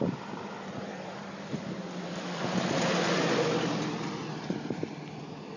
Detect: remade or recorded recorded